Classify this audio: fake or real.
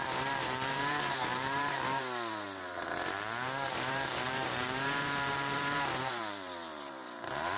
fake